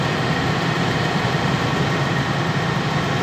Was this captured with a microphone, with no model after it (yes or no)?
no